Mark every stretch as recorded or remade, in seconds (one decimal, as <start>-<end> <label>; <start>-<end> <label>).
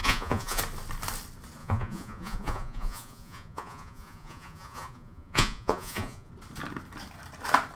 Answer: 0.0-0.6 remade; 0.6-1.6 recorded; 1.6-6.3 remade; 6.3-7.8 recorded